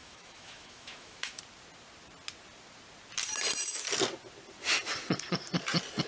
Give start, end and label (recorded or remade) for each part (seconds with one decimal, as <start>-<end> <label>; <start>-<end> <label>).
0.0-1.4 remade; 1.4-6.1 recorded